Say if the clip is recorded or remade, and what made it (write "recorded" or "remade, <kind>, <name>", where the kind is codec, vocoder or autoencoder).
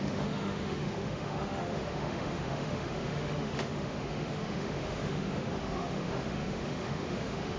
remade, autoencoder, DAC-VAE